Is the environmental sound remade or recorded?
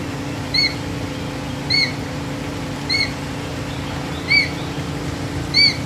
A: recorded